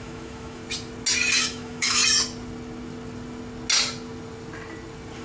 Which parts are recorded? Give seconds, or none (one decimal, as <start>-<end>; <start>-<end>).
0.6-1.4; 2.0-5.2